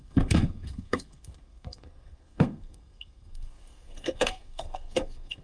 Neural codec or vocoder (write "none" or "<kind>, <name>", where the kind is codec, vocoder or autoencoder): codec, SNAC